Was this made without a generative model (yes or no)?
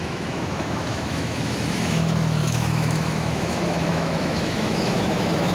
no